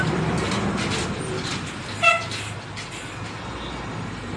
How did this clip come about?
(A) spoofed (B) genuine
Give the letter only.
B